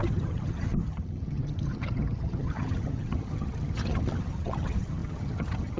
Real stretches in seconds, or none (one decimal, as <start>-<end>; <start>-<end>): none